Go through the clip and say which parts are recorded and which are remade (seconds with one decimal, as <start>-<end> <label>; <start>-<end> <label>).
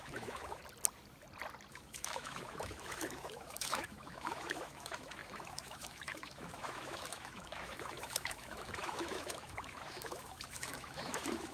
0.0-0.6 remade; 0.6-1.7 recorded; 1.7-11.5 remade